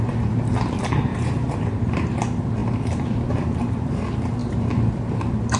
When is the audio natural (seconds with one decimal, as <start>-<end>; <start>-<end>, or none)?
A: 0.0-1.1; 2.0-2.6; 3.9-5.6

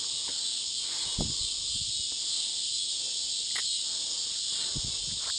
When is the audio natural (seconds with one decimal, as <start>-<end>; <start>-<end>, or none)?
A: 0.0-5.4

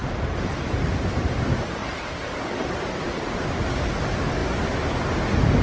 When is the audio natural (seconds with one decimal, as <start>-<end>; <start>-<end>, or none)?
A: 1.4-1.8; 3.6-5.6

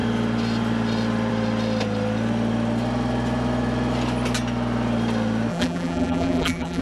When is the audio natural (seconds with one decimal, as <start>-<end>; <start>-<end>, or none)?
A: 0.0-5.5

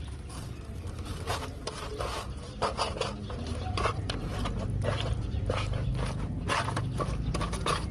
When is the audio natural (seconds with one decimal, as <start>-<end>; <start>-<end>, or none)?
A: 1.9-3.6; 5.9-7.3